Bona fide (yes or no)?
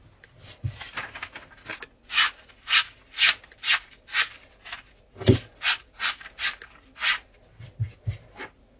yes